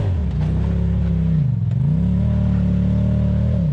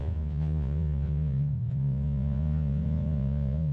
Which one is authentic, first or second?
first